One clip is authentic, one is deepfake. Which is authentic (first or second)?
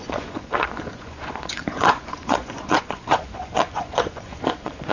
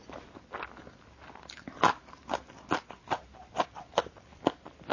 second